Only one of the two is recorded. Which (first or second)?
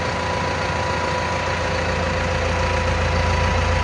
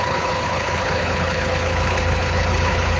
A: first